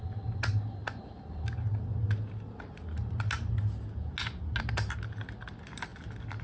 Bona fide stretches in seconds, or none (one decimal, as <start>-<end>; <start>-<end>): 0.0-6.4